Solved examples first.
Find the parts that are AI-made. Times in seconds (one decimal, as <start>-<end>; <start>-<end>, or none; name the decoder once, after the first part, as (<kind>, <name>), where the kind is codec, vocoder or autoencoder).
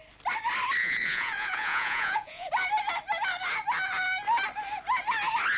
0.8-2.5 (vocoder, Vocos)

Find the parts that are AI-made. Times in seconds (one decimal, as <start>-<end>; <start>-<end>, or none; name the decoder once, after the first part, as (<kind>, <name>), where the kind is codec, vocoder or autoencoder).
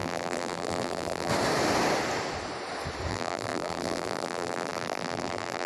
0.0-1.3 (vocoder, BigVGAN v2); 3.1-5.7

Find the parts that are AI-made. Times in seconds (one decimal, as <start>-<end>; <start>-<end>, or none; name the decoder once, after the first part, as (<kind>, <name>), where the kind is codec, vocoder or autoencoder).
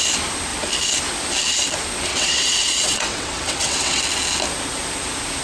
2.1-4.0 (vocoder, WaveNeXt)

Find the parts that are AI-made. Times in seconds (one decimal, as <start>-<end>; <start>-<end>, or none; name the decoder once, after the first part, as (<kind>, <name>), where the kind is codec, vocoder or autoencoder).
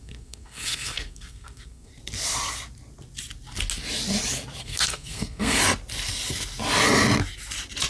0.0-1.9 (codec, SNAC); 4.6-5.6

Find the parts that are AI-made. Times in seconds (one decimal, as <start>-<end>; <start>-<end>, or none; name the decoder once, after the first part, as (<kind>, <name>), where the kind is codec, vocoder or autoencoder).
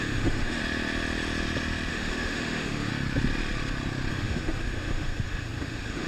0.0-0.6 (autoencoder, DAC-VAE); 1.9-2.9; 4.1-6.1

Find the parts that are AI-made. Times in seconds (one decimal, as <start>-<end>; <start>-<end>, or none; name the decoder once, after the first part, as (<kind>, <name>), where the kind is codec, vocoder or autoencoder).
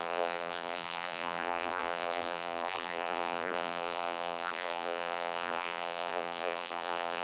0.0-7.2 (vocoder, BigVGAN v2)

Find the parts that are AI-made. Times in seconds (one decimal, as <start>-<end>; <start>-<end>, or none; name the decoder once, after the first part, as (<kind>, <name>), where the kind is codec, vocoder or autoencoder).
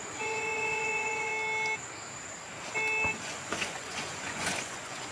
0.0-1.3 (vocoder, Vocos); 3.2-5.1